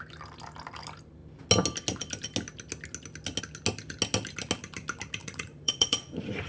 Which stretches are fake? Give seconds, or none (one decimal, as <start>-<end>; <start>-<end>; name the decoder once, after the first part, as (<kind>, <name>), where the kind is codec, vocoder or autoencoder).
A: 5.2-6.5 (vocoder, Vocos)